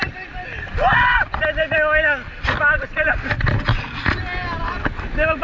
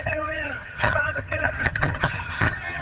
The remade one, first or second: second